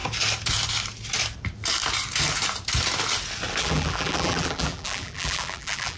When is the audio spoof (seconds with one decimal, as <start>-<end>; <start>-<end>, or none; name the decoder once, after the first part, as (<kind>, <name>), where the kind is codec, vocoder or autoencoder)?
3.6-6.0 (vocoder, BigVGAN v2)